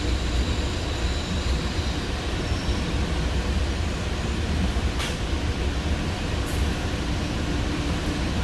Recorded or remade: remade